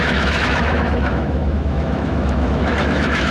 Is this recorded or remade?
remade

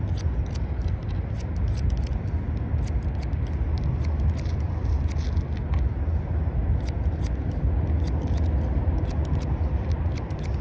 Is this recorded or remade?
recorded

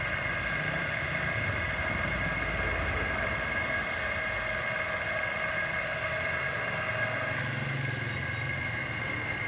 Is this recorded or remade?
recorded